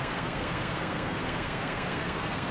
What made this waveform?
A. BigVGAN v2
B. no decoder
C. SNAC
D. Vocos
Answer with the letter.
C